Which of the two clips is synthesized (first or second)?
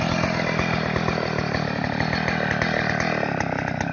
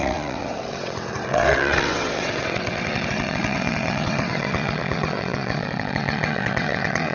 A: second